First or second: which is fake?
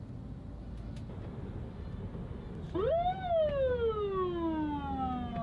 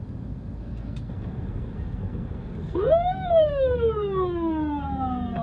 second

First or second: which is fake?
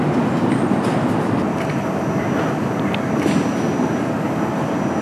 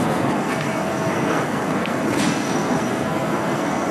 second